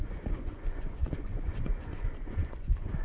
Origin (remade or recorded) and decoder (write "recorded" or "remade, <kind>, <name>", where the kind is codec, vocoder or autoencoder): remade, vocoder, Vocos